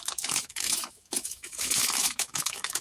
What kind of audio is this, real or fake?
fake